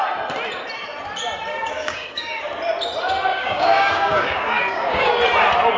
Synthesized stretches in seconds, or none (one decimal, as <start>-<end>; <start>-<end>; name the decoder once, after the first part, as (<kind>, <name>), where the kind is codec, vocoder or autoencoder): 1.5-2.4 (codec, DAC); 3.3-5.1